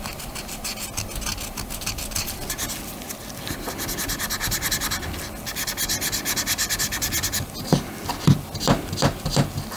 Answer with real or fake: real